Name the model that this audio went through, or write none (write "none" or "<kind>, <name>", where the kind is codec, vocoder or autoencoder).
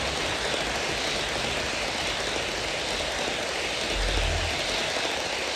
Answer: none